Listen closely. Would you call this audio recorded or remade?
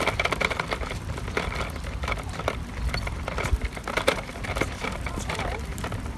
remade